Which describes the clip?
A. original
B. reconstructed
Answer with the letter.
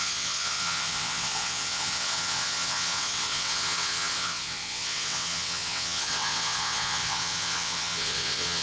B